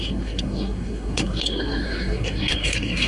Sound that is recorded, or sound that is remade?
remade